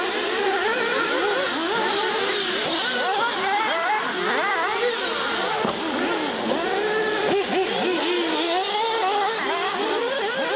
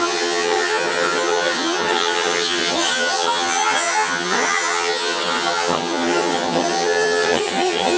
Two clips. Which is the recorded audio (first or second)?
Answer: first